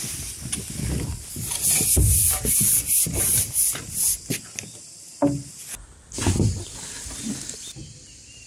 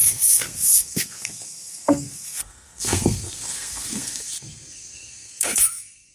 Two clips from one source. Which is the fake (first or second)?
second